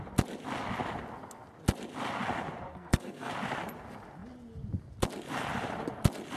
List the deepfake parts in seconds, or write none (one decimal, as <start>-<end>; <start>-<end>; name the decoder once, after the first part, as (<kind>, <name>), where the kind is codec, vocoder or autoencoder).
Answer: 2.7-3.3 (codec, SNAC)